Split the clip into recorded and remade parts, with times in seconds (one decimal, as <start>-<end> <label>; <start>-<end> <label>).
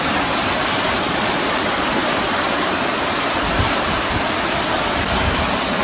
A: 0.0-2.0 recorded; 2.0-5.0 remade; 5.0-5.8 recorded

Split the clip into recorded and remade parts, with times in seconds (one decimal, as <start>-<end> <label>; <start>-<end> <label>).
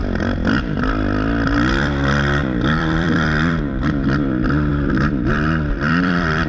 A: 0.0-6.5 remade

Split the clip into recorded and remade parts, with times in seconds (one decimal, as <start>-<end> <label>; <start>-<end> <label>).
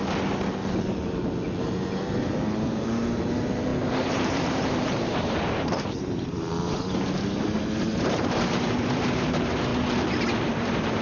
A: 0.0-1.6 recorded; 1.6-9.7 remade; 9.7-10.5 recorded; 10.5-11.0 remade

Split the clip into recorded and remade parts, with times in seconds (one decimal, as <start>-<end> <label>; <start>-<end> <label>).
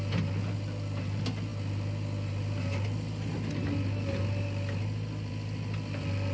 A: 0.0-6.3 recorded